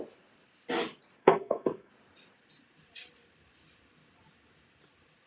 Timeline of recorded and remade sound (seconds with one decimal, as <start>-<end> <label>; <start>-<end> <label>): 0.0-1.2 recorded; 1.2-1.9 remade; 1.9-5.3 recorded